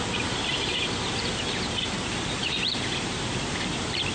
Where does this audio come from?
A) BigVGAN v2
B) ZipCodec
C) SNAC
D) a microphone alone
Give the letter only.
A